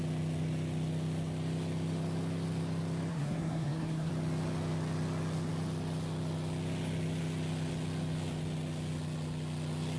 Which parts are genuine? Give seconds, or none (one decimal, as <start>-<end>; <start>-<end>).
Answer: 0.0-3.1; 4.1-10.0